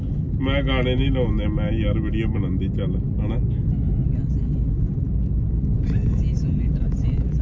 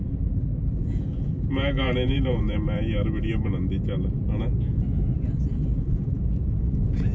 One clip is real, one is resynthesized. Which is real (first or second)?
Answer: first